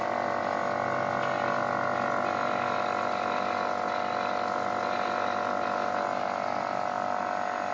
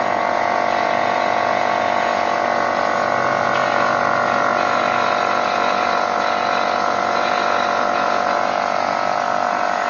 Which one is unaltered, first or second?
first